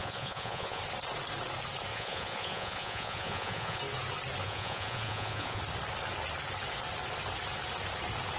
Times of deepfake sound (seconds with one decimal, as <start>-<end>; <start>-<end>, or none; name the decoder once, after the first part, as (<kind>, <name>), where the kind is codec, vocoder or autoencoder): 0.0-0.8 (vocoder, Vocos); 1.9-3.8; 4.4-5.6